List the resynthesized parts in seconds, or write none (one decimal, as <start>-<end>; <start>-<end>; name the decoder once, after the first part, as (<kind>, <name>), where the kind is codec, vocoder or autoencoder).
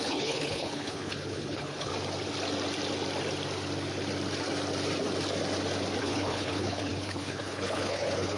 0.0-1.9 (codec, HILCodec); 6.0-8.4